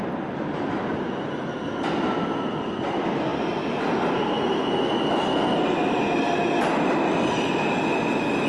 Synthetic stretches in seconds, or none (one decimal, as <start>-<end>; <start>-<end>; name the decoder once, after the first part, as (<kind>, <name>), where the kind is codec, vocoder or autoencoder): none